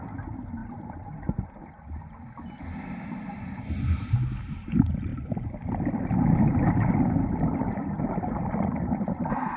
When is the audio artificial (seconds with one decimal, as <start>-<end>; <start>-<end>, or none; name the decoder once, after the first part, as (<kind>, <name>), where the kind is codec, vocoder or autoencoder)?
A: none